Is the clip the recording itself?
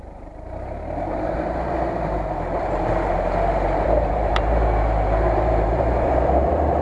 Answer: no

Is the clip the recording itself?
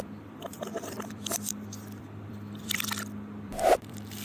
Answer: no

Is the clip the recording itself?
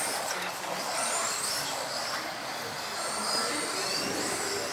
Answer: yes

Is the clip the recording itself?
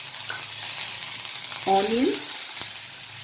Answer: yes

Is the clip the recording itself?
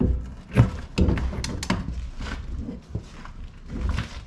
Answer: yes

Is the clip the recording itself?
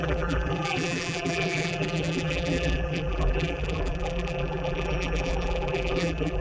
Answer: no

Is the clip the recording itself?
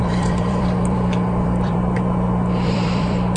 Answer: no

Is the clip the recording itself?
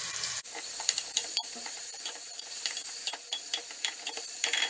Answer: no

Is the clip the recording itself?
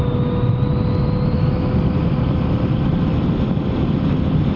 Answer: yes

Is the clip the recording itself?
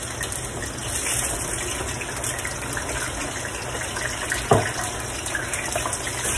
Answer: yes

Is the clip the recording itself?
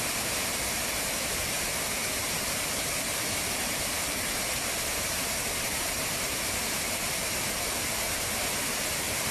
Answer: no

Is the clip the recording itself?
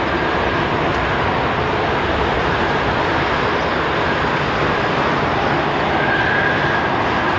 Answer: yes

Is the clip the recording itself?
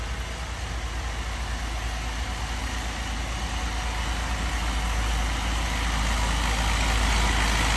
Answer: yes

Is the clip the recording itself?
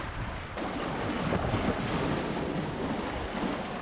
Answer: yes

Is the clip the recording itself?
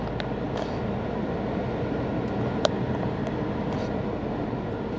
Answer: yes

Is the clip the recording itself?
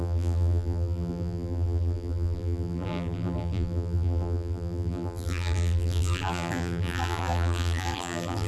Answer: no